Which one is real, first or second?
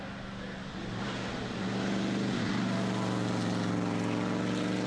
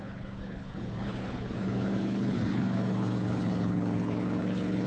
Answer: first